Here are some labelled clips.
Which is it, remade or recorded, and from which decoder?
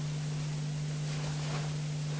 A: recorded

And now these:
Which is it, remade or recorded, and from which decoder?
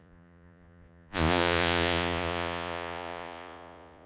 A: remade, vocoder, Vocos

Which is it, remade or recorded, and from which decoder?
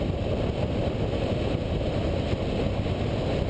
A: recorded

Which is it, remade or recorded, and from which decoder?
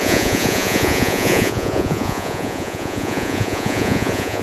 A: remade, vocoder, Vocos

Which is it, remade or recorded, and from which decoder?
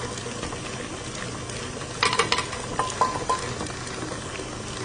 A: recorded